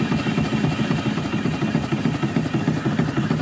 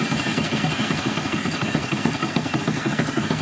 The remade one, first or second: second